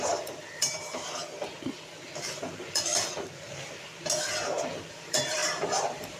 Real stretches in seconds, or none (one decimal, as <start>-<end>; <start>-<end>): 1.2-2.4; 2.9-4.9